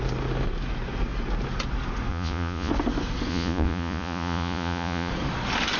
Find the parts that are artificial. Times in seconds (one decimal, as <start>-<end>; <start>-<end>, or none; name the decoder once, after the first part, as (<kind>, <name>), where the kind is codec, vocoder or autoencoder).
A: 2.1-2.7 (vocoder, Vocos); 3.3-5.1